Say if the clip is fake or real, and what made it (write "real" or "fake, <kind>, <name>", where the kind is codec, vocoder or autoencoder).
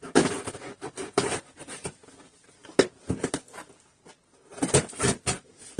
real